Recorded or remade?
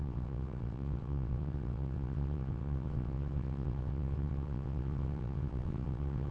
remade